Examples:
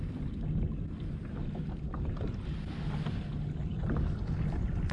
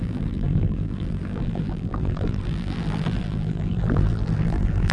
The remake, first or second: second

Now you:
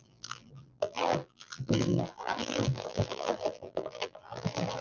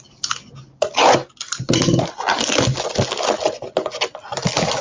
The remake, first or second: first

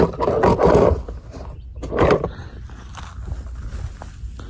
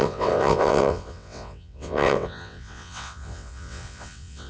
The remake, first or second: second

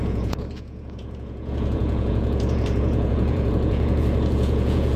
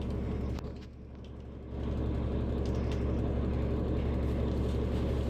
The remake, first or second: first